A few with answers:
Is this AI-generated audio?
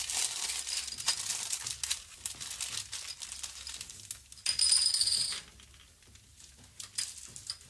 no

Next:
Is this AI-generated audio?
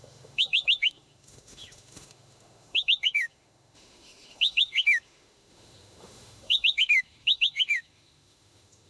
yes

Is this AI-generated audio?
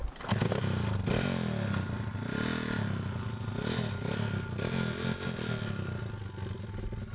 no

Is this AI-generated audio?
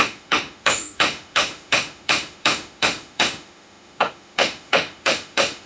yes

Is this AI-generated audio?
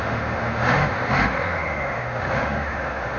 yes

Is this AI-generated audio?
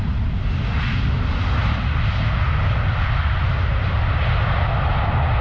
no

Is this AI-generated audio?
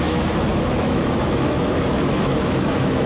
yes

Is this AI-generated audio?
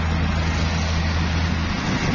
no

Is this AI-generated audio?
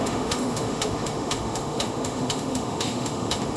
yes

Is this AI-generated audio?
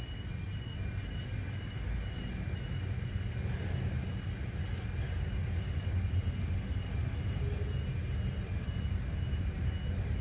no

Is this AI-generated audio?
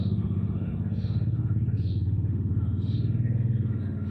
yes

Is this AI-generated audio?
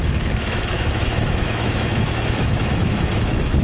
yes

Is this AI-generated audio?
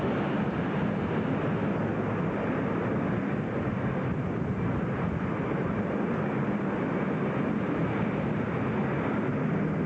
no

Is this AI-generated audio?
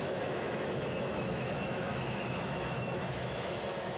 yes